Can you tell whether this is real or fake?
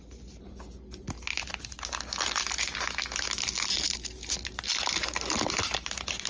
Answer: real